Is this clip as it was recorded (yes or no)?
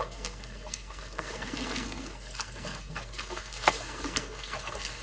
no